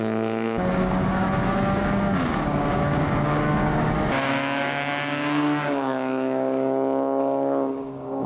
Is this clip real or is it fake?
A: fake